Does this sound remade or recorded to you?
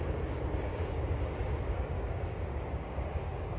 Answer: remade